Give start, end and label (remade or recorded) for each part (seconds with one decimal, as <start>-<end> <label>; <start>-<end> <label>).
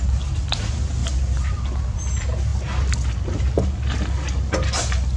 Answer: 0.0-5.2 recorded